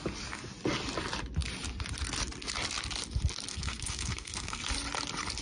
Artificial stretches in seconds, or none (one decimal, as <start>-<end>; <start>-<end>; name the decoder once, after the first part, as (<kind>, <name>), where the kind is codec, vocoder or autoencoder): 3.5-4.6 (codec, SNAC)